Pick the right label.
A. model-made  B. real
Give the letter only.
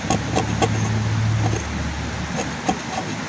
B